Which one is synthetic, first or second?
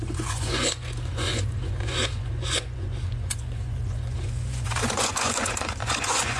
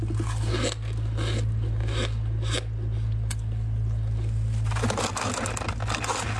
first